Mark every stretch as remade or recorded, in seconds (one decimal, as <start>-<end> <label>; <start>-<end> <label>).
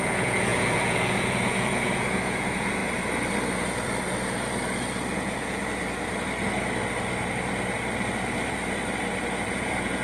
0.0-2.8 remade; 2.8-5.1 recorded; 5.1-5.6 remade; 5.6-9.5 recorded; 9.5-10.0 remade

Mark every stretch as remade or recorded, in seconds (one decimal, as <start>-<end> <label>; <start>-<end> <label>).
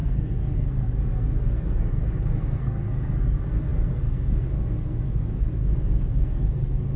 0.0-7.0 remade